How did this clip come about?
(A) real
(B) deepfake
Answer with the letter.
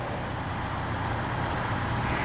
B